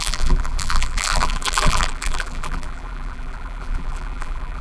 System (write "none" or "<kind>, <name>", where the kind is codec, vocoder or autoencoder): vocoder, BigVGAN v2